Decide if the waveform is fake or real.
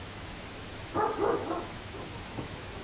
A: fake